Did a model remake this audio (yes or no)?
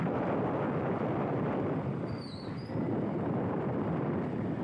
yes